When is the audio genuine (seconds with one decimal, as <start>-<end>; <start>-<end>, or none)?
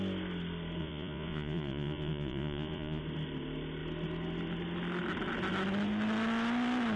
0.0-0.8; 3.0-7.0